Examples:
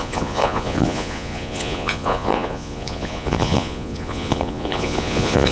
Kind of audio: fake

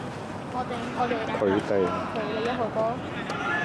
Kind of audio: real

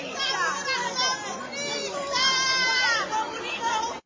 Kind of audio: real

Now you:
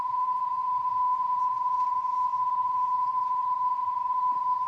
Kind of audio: fake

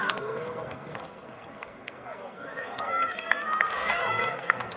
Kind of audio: fake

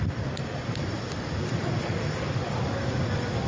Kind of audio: real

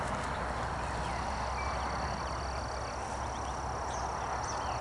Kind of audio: real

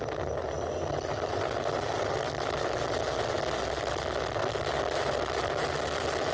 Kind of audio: real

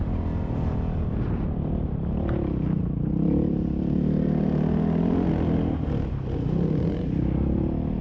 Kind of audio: real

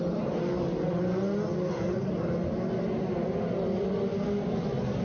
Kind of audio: real